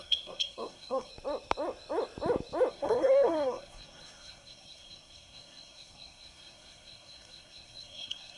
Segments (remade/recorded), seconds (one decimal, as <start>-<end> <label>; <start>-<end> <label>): 0.0-1.1 remade; 1.1-2.7 recorded; 2.7-8.4 remade